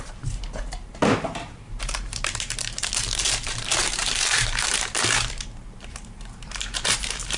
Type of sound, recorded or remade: remade